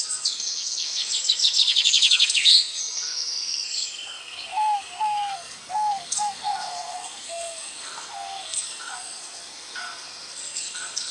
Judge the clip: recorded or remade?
remade